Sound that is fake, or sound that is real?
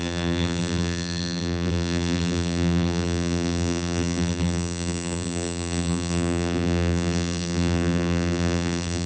fake